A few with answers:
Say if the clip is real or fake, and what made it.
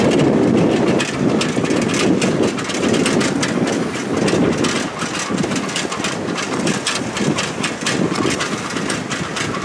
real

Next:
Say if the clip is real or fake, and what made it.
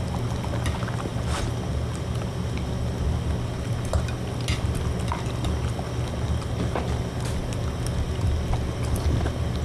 real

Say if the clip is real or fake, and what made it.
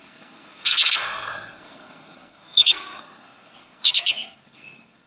fake, codec, SNAC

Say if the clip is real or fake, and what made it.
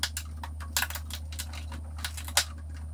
real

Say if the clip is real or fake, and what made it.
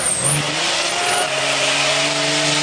real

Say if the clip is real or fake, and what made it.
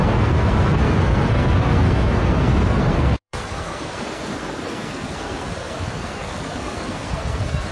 fake, codec, SNAC